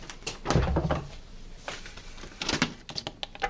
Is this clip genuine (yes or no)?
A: yes